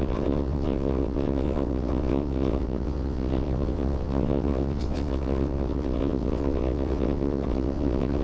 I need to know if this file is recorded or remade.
remade